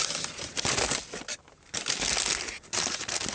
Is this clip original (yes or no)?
yes